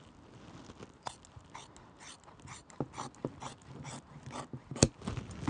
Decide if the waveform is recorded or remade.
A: recorded